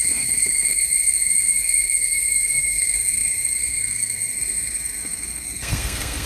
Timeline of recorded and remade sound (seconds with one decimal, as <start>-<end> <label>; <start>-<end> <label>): 0.0-6.3 remade

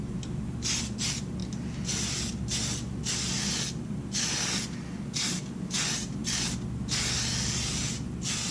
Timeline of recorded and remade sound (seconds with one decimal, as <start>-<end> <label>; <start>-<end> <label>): 0.0-8.5 recorded

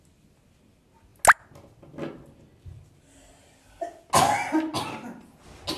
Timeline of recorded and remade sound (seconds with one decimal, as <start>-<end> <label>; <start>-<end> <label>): 0.0-5.8 recorded

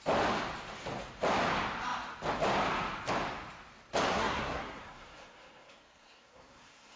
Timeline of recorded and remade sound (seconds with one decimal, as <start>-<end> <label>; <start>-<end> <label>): 0.0-4.1 recorded; 4.1-7.0 remade

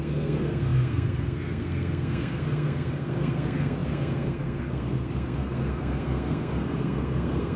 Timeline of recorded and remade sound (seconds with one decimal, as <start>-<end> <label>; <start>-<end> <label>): 0.0-7.6 remade